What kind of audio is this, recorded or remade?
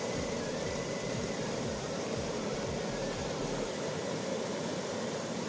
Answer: remade